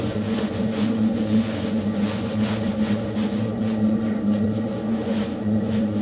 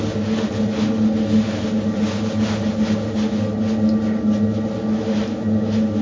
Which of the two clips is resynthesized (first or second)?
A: first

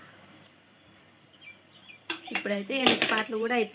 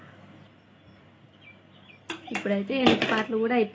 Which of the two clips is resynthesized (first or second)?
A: first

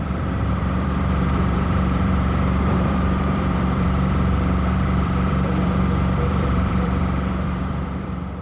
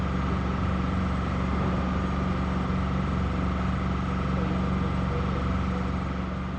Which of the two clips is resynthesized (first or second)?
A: first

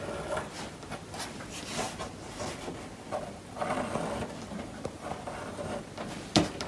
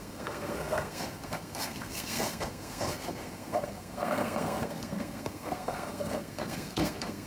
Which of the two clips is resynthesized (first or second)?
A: second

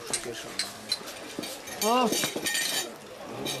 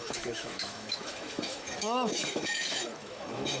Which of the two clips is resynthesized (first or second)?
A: second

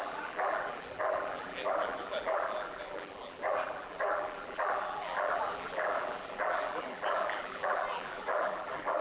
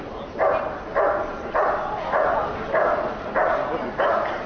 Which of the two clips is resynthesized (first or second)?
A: first